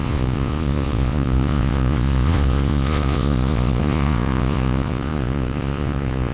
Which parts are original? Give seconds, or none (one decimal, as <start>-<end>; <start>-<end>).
none